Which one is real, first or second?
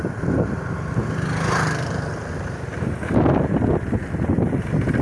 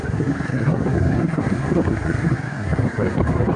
first